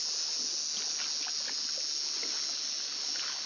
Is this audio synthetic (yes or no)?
no